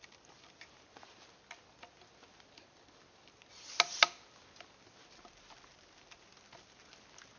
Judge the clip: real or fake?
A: real